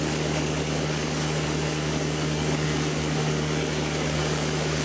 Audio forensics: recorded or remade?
remade